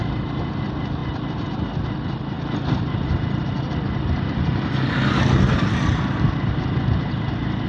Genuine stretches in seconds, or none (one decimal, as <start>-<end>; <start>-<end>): 0.0-7.7